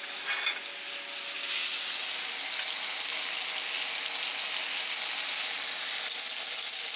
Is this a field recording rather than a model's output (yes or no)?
yes